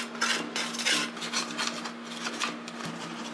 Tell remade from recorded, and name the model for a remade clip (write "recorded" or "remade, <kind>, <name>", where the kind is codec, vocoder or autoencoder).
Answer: recorded